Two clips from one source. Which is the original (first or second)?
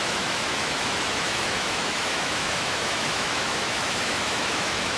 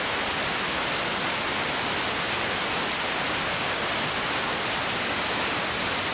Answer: second